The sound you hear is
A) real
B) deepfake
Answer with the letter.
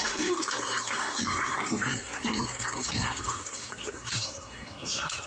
B